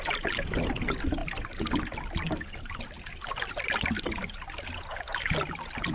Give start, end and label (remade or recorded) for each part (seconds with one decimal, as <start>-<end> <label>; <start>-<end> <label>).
0.0-5.9 recorded